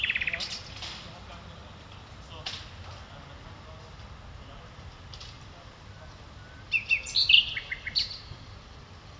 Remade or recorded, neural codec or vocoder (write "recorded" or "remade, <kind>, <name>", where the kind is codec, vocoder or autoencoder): recorded